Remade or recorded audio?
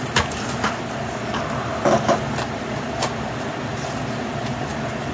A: recorded